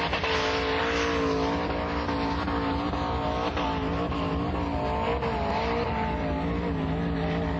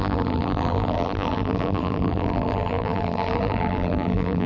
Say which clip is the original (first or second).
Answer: first